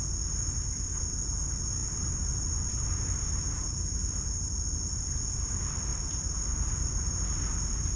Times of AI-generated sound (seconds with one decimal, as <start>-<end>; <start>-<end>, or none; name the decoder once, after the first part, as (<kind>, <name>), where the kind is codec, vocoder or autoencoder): 5.9-6.7 (vocoder, BigVGAN v2)